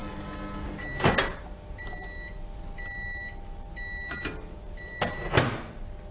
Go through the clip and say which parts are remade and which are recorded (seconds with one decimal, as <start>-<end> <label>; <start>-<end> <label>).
0.0-6.1 recorded